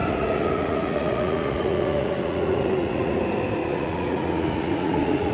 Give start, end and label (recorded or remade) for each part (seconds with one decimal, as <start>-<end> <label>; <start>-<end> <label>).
0.0-3.2 remade; 3.2-3.6 recorded; 3.6-5.3 remade

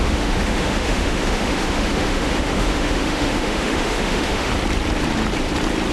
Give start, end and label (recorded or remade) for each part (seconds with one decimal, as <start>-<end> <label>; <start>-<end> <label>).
0.0-4.5 remade; 4.5-5.9 recorded

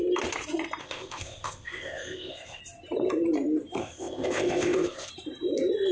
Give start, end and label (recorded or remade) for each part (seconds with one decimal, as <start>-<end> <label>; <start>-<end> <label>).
0.0-0.8 recorded; 0.8-2.6 remade; 2.6-3.8 recorded; 3.8-5.1 remade; 5.1-5.9 recorded

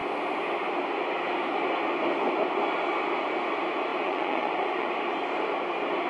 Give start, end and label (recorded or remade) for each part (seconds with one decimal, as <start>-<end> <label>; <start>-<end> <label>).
0.0-3.9 recorded; 3.9-4.9 remade; 4.9-6.1 recorded

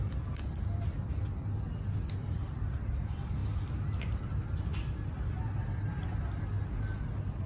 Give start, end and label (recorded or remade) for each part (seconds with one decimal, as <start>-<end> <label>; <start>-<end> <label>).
0.0-7.5 recorded